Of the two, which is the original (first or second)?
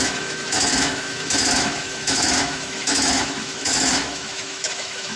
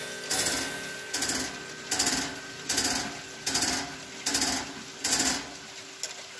second